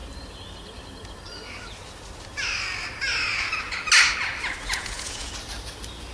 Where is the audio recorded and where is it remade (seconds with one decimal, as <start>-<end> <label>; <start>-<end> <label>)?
0.0-3.3 recorded; 3.3-3.9 remade; 3.9-4.6 recorded; 4.6-5.3 remade; 5.3-6.1 recorded